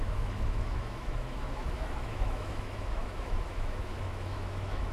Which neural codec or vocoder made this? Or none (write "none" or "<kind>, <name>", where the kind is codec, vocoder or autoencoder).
autoencoder, DAC-VAE